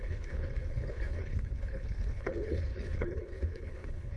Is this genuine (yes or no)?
no